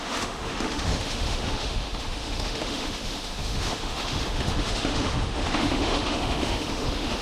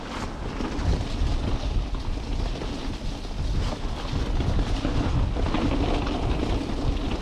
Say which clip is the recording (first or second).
second